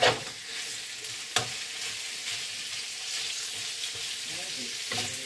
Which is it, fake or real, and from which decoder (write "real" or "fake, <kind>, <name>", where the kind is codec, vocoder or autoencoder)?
real